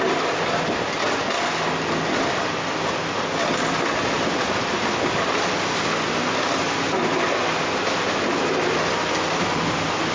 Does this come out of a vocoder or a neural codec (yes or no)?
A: no